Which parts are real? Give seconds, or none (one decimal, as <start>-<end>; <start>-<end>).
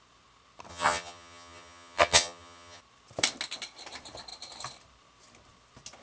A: 0.0-0.7; 2.8-6.0